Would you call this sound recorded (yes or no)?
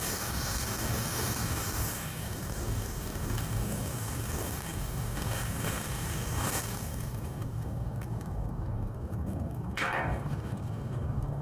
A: no